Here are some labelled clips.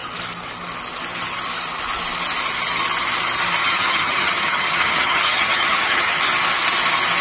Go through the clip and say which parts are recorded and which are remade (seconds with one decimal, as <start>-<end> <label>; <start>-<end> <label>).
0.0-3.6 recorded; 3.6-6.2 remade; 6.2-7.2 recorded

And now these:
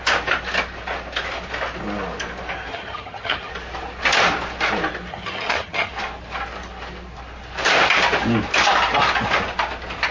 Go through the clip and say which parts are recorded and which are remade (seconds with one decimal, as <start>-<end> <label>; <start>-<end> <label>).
0.0-2.7 recorded; 2.7-3.5 remade; 3.5-5.1 recorded; 5.1-5.9 remade; 5.9-10.1 recorded

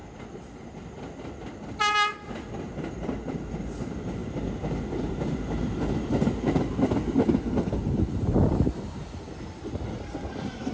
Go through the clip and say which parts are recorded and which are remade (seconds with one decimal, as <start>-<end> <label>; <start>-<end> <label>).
0.0-10.7 recorded